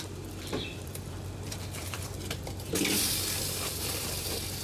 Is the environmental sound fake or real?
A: fake